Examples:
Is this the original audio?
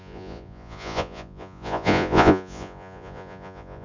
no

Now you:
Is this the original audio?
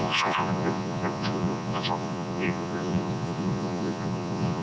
no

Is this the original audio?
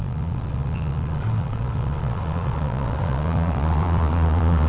no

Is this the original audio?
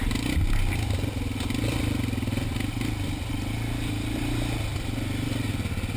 yes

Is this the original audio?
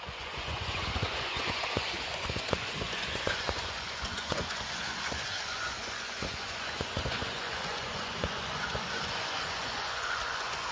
no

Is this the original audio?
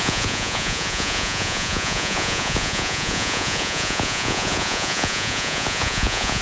no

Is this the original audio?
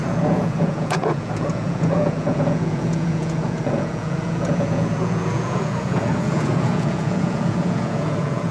no